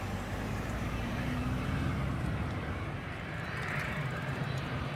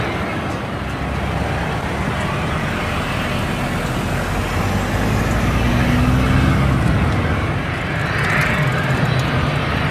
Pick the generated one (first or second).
first